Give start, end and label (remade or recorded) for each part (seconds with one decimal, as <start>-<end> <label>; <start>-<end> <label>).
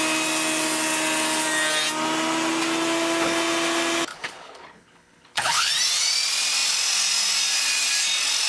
0.0-4.1 recorded; 4.1-5.7 remade; 5.7-8.5 recorded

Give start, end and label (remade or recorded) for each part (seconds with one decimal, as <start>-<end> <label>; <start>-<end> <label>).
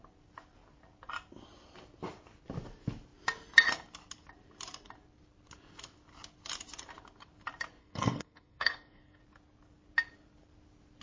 0.0-7.8 recorded; 7.8-9.2 remade; 9.2-11.0 recorded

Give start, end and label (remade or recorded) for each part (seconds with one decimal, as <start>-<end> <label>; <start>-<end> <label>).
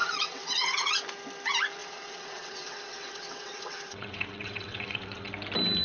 0.0-0.9 remade; 0.9-1.8 recorded; 1.8-5.3 remade; 5.3-5.8 recorded